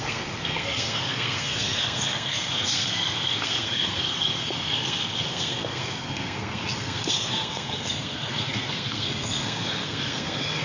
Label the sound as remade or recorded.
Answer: remade